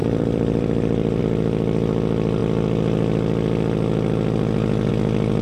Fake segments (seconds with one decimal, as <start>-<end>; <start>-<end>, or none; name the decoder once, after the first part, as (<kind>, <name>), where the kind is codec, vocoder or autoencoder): 0.0-1.2 (vocoder, BigVGAN v2)

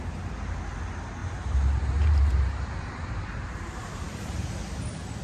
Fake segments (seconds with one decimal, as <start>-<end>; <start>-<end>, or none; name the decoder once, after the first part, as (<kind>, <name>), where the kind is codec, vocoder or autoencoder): 1.2-4.3 (vocoder, BigVGAN v2)

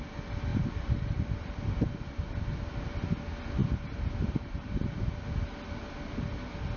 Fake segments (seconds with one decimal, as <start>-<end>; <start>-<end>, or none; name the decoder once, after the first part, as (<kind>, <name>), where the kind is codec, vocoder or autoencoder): 3.6-5.2 (vocoder, BigVGAN v2)

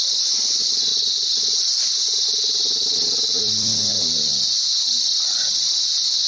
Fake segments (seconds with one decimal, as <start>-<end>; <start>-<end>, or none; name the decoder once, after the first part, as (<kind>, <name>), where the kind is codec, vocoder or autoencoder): 0.0-0.9 (vocoder, BigVGAN v2); 1.6-4.3; 5.4-6.3